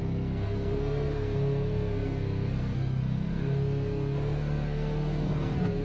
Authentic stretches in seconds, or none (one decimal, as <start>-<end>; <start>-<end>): none